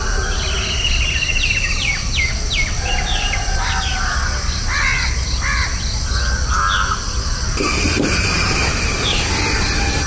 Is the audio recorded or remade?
recorded